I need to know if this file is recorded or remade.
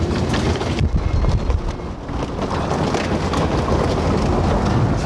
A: recorded